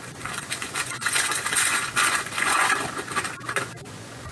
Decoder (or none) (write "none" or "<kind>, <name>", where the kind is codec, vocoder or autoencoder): vocoder, Vocos